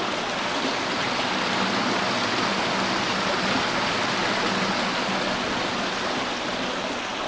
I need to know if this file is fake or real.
real